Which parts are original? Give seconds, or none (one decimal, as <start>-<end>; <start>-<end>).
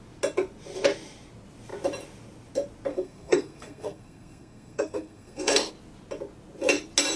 0.0-2.9; 5.7-7.2